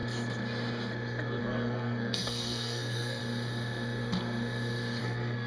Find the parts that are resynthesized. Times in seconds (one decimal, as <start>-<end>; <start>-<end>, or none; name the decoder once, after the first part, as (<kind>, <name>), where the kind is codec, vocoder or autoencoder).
1.4-3.2 (codec, SNAC); 5.0-5.5